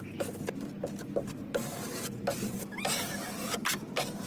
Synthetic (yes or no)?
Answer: no